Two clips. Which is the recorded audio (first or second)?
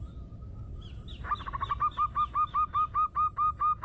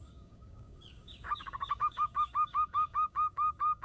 first